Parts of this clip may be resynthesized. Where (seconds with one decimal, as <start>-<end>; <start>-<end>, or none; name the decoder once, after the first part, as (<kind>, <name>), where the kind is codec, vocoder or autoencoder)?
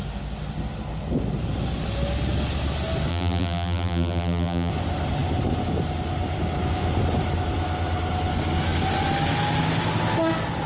3.1-4.7 (vocoder, BigVGAN v2)